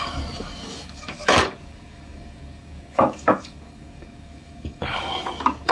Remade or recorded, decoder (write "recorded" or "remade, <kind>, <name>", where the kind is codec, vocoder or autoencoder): remade, codec, DAC